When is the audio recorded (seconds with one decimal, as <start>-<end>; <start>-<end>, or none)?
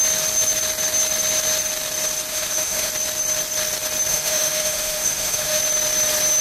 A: 0.0-2.3; 2.9-4.1; 5.6-6.4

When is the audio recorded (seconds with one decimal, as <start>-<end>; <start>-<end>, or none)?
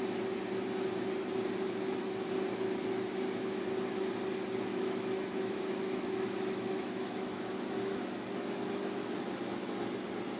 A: 0.0-4.7; 9.8-10.4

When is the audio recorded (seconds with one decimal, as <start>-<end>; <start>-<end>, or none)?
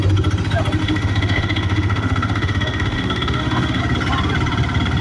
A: 0.0-0.8; 3.8-5.0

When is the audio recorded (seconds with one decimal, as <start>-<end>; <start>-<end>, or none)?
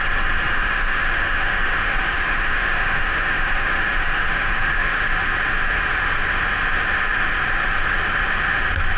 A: 0.0-0.5; 5.0-9.0